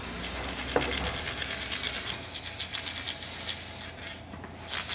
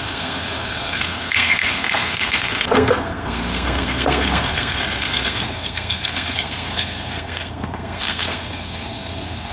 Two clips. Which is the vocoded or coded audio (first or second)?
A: second